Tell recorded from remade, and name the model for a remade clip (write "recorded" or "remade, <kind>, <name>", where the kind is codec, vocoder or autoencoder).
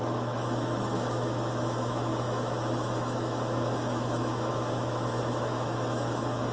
remade, autoencoder, DAC-VAE